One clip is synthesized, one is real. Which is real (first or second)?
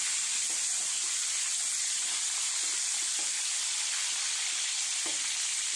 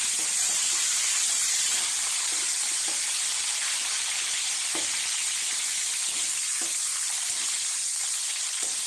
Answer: first